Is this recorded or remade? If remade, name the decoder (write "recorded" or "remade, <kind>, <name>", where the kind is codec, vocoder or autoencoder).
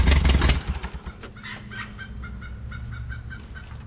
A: recorded